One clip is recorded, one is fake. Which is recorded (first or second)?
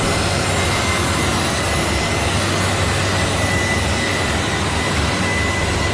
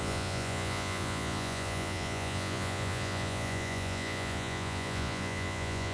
first